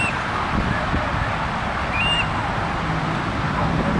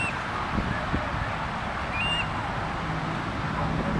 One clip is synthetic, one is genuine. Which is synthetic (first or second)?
first